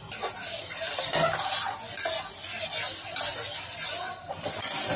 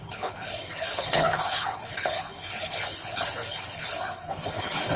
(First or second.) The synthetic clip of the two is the second